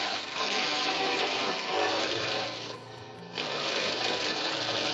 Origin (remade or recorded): remade